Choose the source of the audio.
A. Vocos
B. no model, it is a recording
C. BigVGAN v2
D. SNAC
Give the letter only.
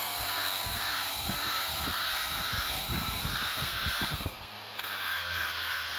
D